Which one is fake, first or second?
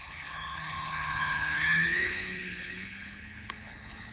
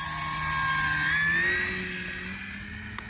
first